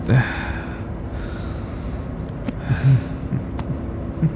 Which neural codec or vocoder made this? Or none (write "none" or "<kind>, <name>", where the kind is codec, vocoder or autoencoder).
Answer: none